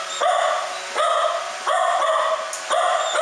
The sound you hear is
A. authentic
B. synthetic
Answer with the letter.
A